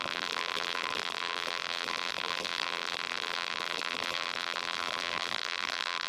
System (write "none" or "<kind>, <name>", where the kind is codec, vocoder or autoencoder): vocoder, BigVGAN v2